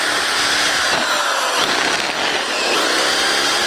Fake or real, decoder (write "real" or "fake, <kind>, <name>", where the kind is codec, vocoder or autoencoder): real